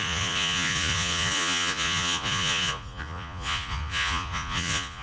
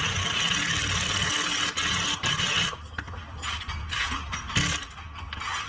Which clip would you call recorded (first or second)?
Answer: second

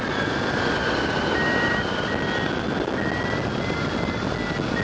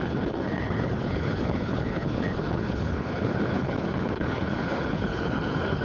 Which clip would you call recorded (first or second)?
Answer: first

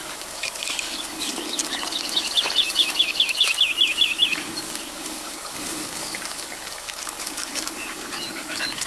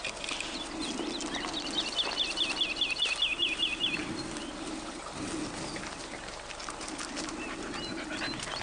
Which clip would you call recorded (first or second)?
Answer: second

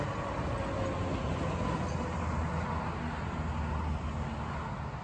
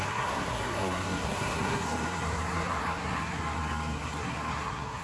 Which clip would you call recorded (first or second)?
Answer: first